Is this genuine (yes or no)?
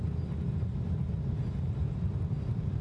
yes